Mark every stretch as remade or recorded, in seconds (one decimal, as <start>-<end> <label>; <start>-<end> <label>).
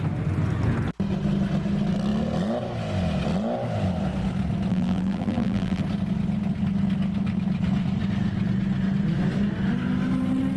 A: 0.0-4.7 recorded; 4.7-5.8 remade; 5.8-10.6 recorded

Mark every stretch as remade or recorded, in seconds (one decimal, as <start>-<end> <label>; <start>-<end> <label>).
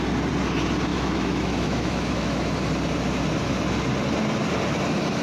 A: 0.0-0.9 recorded; 0.9-2.5 remade; 2.5-5.2 recorded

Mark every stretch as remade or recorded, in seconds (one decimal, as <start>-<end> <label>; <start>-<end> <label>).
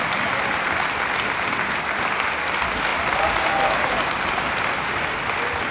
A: 0.0-5.7 recorded